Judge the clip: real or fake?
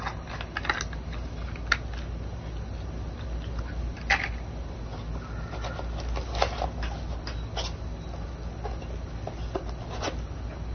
real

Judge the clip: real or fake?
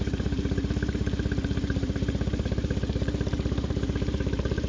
fake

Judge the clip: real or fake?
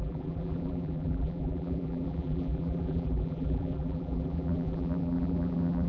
fake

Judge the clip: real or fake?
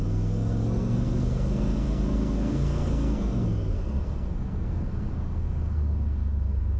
fake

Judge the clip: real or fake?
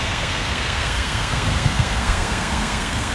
fake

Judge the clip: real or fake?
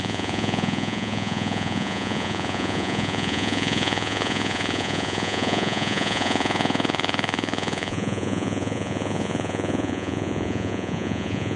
fake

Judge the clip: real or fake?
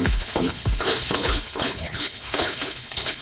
fake